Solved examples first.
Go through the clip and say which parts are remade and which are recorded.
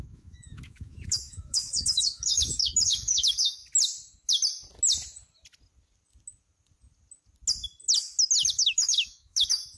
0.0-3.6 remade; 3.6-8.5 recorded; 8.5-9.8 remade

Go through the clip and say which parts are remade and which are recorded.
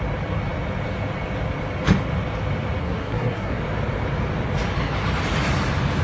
0.0-2.8 recorded; 2.8-3.6 remade; 3.6-6.0 recorded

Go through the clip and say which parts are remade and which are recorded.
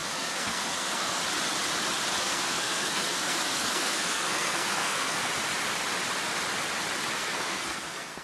0.0-1.2 remade; 1.2-2.2 recorded; 2.2-5.3 remade; 5.3-7.1 recorded; 7.1-8.2 remade